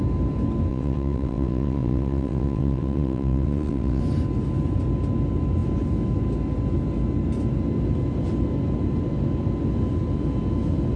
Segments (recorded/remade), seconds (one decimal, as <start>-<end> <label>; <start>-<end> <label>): 0.0-0.7 recorded; 0.7-4.0 remade; 4.0-11.0 recorded